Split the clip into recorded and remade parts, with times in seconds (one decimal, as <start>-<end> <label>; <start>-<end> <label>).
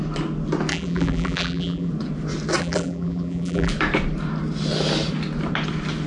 0.0-0.7 recorded; 0.7-1.9 remade; 1.9-2.6 recorded; 2.6-3.7 remade; 3.7-6.1 recorded